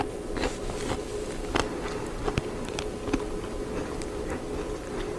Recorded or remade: recorded